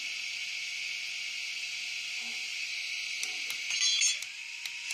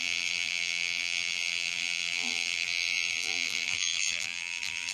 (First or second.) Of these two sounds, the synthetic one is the second